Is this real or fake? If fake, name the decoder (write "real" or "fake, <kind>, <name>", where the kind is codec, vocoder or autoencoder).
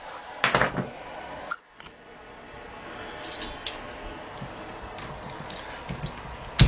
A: real